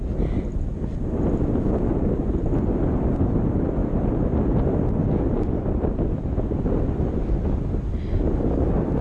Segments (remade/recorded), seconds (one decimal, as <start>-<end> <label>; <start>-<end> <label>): 0.0-9.0 recorded